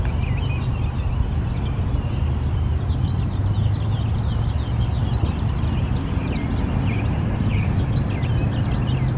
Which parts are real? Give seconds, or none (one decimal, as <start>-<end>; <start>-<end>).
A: 0.0-6.2; 8.4-9.2